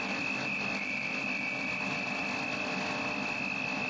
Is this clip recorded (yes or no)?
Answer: yes